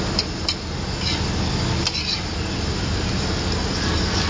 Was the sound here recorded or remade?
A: recorded